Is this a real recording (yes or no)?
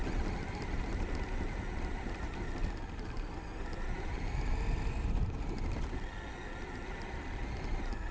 yes